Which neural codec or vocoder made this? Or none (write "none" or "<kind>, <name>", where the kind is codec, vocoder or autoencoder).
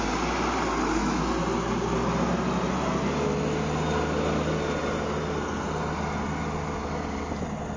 none